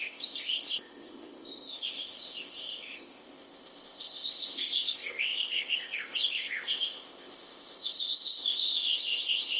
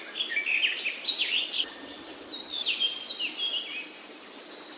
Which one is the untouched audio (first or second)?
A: second